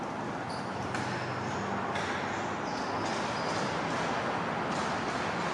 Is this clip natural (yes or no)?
yes